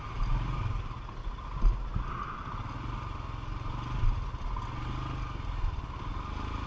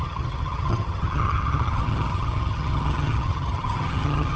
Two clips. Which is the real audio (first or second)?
first